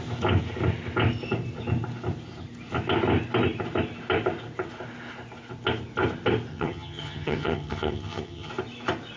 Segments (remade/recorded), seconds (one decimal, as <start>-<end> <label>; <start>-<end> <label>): 0.0-6.5 recorded; 6.5-8.5 remade; 8.5-9.2 recorded